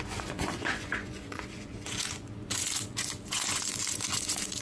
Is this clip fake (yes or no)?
yes